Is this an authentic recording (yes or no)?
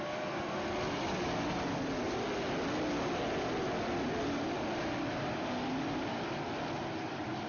yes